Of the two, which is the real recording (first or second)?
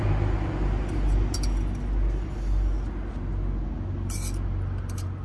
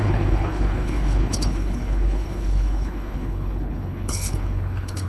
first